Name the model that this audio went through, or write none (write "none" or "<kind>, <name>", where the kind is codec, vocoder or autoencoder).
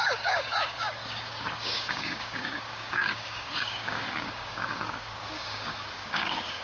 codec, DAC